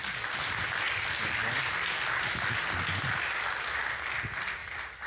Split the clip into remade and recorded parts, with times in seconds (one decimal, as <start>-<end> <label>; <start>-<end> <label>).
0.0-5.1 recorded